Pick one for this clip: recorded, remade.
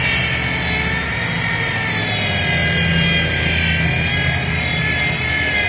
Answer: recorded